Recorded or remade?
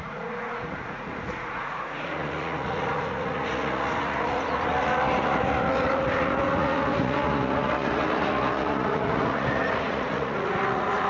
remade